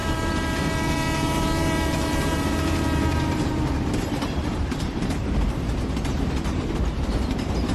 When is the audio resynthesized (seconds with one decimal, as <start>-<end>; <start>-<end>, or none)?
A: 0.0-7.7